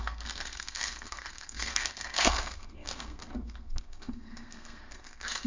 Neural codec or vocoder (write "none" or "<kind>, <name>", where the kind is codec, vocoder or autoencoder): codec, SNAC